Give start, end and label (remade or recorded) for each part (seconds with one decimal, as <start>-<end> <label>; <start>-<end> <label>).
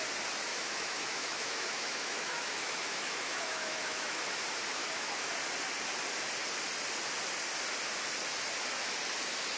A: 0.0-0.5 recorded; 0.5-4.2 remade; 4.2-4.8 recorded; 4.8-5.3 remade; 5.3-9.6 recorded